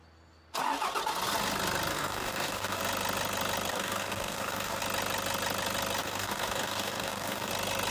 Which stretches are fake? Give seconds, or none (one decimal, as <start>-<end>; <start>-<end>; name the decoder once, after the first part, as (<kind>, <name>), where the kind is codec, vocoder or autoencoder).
1.9-2.8 (codec, DAC); 3.7-4.8; 6.0-7.5